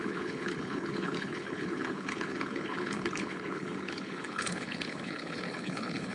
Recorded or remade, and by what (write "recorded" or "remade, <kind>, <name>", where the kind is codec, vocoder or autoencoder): remade, codec, HILCodec